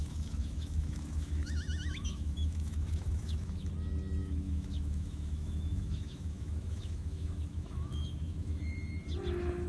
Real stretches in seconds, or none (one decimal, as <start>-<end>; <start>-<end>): 3.7-4.2; 8.6-9.7